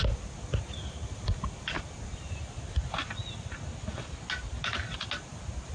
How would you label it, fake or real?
real